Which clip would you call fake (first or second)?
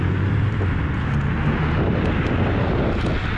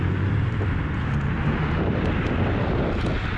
second